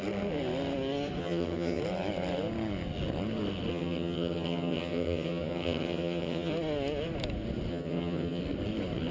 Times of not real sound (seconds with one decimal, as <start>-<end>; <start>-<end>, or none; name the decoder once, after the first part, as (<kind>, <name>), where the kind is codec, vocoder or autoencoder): 1.2-1.8 (vocoder, HiFi-GAN); 3.7-6.5; 7.7-8.4